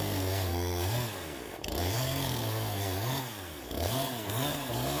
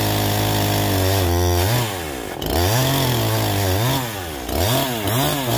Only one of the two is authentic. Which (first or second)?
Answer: second